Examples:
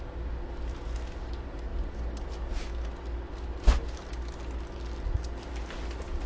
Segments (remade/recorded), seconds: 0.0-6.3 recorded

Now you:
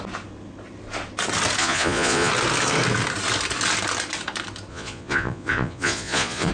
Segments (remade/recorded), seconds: 0.0-1.6 recorded; 1.6-2.3 remade; 2.3-4.7 recorded; 4.7-6.5 remade

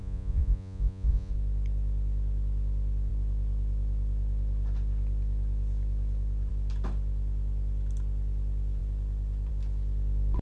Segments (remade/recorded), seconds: 0.0-1.3 remade; 1.3-10.4 recorded